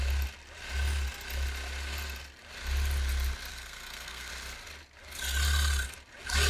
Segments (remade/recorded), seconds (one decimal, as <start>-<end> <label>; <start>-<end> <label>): 0.0-3.5 recorded; 3.5-4.3 remade; 4.3-6.5 recorded